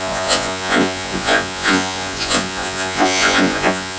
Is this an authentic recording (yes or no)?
no